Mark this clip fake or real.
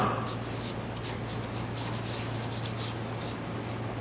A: real